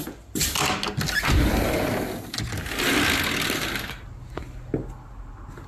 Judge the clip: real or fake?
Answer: real